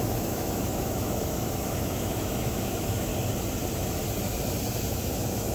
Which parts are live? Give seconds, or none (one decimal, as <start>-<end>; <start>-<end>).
3.1-4.9